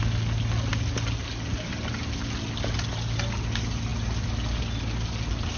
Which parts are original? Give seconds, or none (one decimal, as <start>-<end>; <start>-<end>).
0.0-5.6